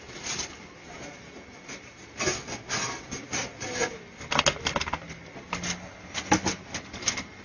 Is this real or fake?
real